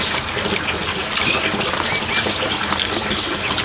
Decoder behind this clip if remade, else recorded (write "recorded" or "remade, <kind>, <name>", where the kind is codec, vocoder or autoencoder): recorded